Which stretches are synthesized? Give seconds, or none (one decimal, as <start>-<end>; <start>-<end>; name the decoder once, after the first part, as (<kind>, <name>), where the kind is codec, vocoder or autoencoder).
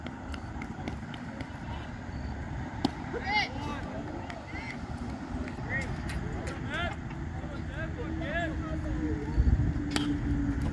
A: none